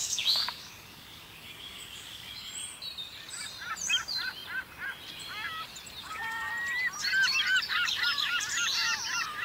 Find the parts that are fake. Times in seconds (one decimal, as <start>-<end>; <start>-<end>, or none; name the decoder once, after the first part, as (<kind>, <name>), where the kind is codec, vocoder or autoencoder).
0.0-2.5 (codec, DAC); 6.0-6.5